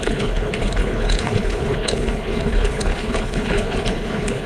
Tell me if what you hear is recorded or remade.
remade